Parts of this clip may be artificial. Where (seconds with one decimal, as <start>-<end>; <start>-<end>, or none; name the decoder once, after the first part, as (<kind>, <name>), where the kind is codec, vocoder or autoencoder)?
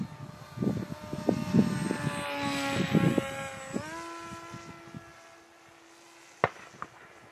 none